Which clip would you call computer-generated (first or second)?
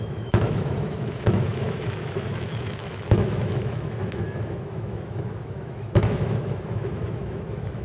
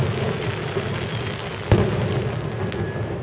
first